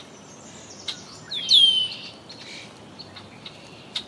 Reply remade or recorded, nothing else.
recorded